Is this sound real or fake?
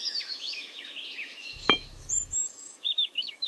fake